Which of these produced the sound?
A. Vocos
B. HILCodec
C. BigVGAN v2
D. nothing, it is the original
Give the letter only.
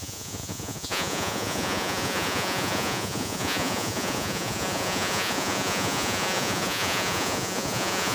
A